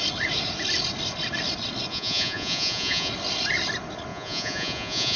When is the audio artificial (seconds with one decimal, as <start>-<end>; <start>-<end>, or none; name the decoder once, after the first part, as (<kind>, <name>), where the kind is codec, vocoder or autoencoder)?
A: 1.9-3.1 (vocoder, Vocos); 4.1-5.2